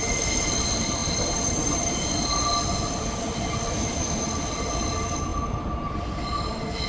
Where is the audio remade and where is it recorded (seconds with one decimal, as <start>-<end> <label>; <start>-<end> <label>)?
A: 0.0-6.9 recorded